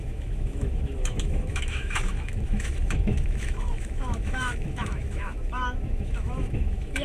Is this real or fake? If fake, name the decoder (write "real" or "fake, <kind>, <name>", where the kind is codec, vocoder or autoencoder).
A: fake, autoencoder, DAC-VAE